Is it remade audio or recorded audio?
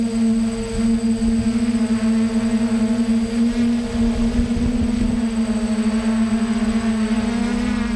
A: recorded